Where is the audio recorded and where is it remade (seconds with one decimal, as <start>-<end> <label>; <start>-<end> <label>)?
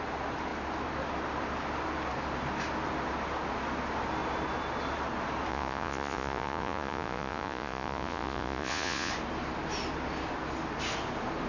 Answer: 0.0-5.5 recorded; 5.5-9.1 remade; 9.1-11.5 recorded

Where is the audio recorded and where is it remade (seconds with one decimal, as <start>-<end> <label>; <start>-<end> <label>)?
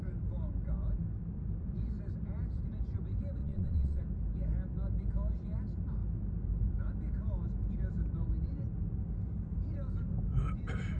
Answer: 0.0-3.4 recorded; 3.4-4.0 remade; 4.0-11.0 recorded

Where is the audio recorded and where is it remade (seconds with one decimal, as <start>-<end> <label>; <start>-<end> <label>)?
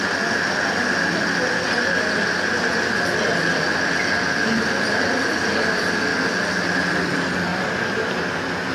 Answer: 0.0-8.7 recorded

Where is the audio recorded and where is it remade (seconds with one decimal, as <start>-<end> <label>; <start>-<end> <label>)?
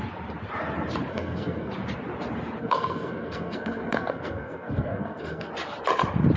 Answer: 0.0-1.1 recorded; 1.1-1.7 remade; 1.7-2.6 recorded; 2.6-5.5 remade; 5.5-6.4 recorded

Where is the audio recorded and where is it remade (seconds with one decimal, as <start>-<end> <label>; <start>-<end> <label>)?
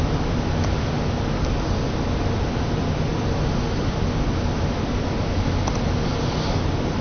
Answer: 0.0-7.0 recorded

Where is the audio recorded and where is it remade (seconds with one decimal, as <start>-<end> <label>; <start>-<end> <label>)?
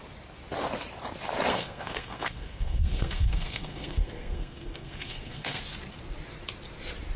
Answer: 0.0-1.5 recorded; 1.5-5.6 remade; 5.6-7.2 recorded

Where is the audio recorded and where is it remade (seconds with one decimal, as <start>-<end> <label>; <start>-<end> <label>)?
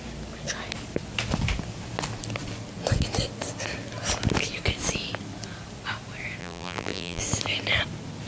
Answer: 0.0-6.4 recorded; 6.4-7.2 remade; 7.2-8.3 recorded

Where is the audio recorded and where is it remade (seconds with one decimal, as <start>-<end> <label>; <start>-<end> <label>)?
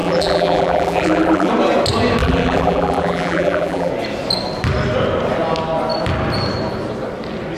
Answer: 0.0-1.5 remade; 1.5-2.2 recorded; 2.2-3.9 remade; 3.9-7.6 recorded